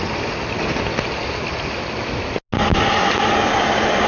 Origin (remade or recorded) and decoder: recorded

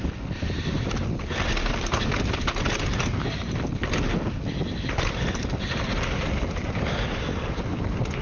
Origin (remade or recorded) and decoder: recorded